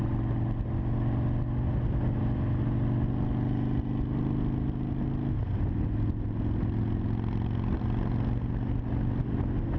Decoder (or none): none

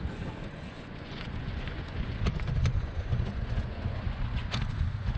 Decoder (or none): vocoder, Vocos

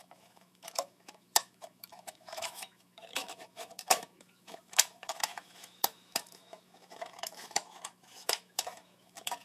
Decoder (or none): autoencoder, DAC-VAE